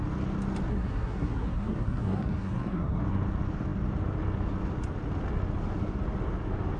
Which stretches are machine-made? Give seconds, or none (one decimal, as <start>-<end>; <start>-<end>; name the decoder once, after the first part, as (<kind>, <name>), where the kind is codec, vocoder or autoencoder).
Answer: 0.7-3.0 (codec, SNAC)